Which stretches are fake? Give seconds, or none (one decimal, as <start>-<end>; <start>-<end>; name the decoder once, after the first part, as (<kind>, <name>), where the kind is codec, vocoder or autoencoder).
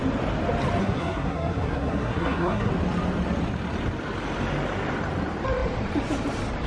0.8-2.7 (codec, SNAC)